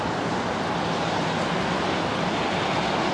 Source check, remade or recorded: recorded